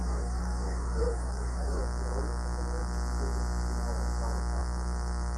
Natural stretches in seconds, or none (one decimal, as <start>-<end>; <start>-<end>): 1.8-5.4